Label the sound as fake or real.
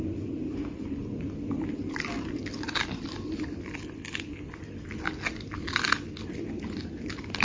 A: real